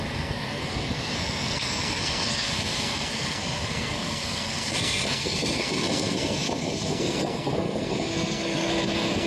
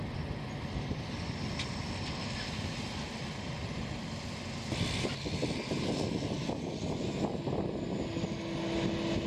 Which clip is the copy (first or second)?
first